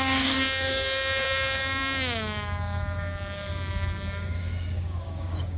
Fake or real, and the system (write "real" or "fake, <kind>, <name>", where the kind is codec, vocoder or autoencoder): fake, codec, DAC